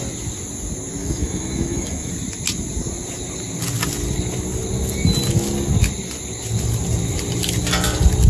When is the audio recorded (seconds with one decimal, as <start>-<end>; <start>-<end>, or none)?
0.0-1.0; 2.1-8.3